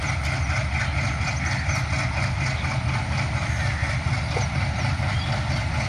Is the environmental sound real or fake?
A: real